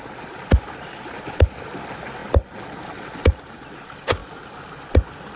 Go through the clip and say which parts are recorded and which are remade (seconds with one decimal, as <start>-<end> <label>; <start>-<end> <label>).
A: 0.0-5.4 recorded